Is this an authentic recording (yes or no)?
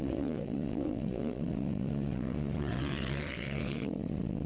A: no